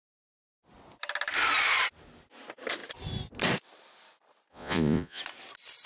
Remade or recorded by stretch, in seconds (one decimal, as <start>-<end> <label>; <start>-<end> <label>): 0.0-4.5 recorded; 4.5-5.2 remade; 5.2-5.9 recorded